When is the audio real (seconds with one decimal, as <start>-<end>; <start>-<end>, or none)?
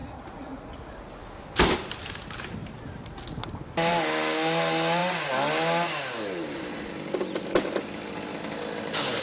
0.9-9.2